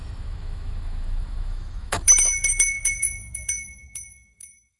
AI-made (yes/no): yes